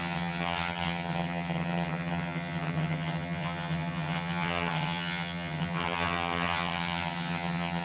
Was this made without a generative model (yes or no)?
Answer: no